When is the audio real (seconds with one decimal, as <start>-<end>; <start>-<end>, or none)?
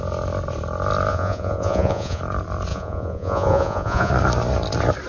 0.0-1.1; 2.2-2.7; 4.1-5.1